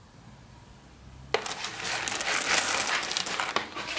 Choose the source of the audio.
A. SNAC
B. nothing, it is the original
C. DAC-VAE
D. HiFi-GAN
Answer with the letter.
B